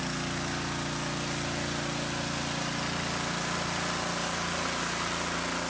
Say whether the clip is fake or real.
real